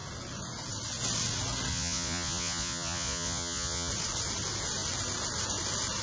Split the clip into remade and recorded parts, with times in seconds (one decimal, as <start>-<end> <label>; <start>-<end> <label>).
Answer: 0.0-1.7 recorded; 1.7-3.9 remade; 3.9-6.0 recorded